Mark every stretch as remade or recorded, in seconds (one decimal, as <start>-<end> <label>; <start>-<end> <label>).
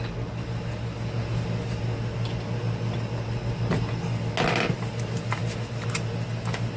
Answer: 0.0-6.8 recorded